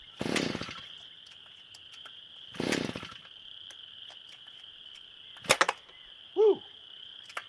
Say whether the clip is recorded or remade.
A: recorded